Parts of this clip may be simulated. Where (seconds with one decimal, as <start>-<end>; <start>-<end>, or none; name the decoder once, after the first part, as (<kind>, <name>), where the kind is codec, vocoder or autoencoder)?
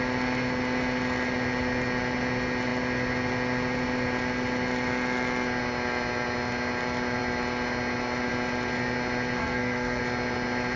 9.4-10.0 (codec, SNAC)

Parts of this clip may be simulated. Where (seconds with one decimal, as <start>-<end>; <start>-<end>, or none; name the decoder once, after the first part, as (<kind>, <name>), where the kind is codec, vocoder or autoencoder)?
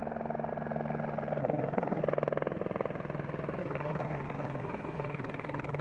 1.4-2.0 (codec, SNAC); 3.6-5.8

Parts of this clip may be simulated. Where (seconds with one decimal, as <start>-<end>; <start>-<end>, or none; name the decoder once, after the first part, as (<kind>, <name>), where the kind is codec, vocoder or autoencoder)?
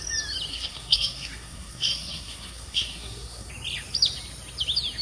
0.5-3.5 (codec, SNAC)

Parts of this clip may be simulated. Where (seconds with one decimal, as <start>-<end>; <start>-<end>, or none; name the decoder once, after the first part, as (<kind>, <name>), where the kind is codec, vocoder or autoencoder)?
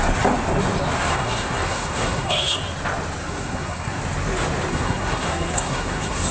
1.1-2.6 (codec, SNAC); 3.2-4.0; 4.7-6.3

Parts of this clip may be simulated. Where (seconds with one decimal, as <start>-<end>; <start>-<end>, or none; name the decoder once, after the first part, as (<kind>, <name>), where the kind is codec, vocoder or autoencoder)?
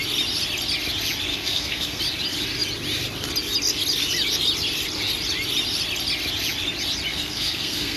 1.3-2.0 (codec, SNAC); 7.1-8.0